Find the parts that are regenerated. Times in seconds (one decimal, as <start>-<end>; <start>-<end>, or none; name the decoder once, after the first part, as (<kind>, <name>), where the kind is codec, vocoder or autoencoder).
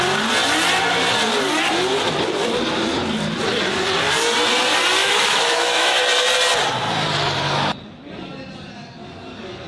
5.0-6.0 (autoencoder, DAC-VAE)